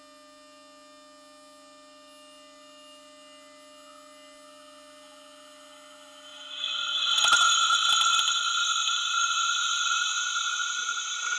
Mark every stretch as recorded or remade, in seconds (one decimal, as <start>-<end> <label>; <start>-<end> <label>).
0.0-11.4 recorded